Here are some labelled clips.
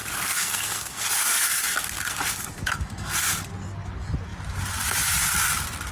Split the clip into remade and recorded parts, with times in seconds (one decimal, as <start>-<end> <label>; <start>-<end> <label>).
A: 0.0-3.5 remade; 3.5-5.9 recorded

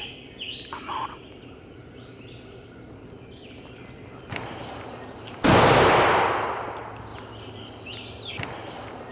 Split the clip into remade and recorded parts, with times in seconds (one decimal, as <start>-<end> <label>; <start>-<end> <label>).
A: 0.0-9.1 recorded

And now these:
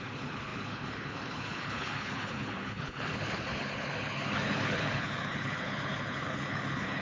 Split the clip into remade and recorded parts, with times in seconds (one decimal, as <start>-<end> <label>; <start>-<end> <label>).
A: 0.0-7.0 remade

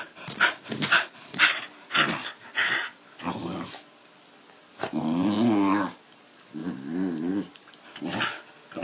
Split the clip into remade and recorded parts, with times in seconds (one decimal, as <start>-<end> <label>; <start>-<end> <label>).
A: 0.0-8.8 recorded

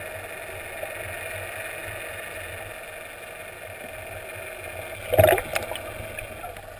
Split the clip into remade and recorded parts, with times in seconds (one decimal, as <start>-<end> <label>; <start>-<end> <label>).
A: 0.0-6.8 recorded